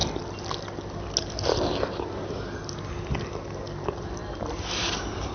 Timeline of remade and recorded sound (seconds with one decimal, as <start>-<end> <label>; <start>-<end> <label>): 0.0-4.2 recorded; 4.2-5.3 remade

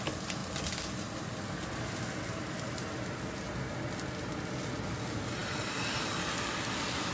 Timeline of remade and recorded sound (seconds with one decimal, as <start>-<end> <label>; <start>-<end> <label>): 0.0-5.4 recorded; 5.4-6.1 remade; 6.1-7.1 recorded

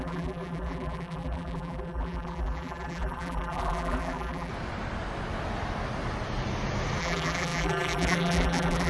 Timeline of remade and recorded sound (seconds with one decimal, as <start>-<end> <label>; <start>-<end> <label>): 0.0-4.5 remade; 4.5-7.0 recorded; 7.0-8.9 remade